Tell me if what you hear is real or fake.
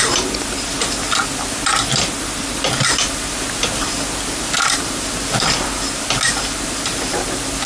real